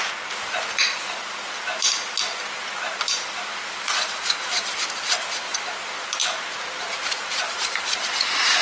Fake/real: real